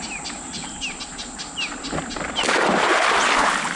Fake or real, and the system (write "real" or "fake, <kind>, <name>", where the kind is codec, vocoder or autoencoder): real